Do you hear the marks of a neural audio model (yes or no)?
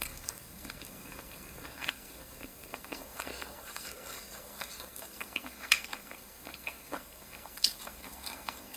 yes